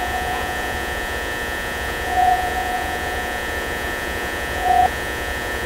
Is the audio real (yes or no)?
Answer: no